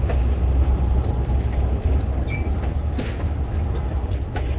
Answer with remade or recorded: recorded